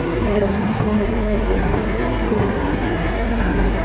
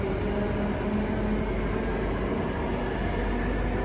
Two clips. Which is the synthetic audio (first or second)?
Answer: first